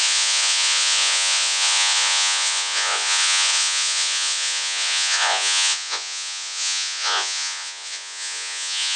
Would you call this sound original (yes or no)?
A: no